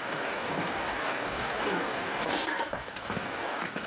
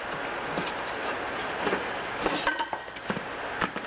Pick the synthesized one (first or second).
first